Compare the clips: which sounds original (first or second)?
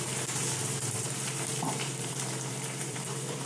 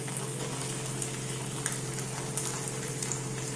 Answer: second